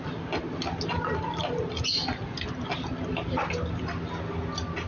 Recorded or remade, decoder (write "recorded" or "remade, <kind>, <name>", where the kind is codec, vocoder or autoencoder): recorded